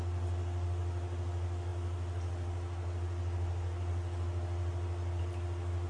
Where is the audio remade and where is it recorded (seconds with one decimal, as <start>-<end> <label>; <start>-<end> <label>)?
0.0-5.9 recorded